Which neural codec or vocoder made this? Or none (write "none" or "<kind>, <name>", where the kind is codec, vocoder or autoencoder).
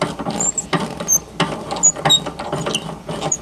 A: none